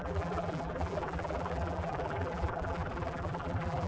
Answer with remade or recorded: remade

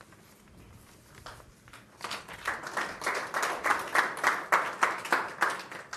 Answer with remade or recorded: recorded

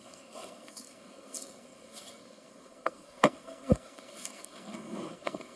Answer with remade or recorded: remade